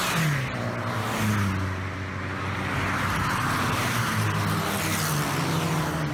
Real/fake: real